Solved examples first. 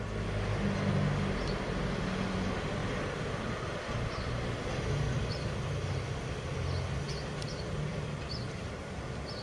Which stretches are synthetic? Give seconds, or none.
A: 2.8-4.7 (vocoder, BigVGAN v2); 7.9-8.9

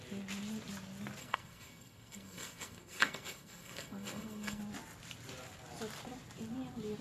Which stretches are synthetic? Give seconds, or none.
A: 1.2-4.6 (codec, SNAC)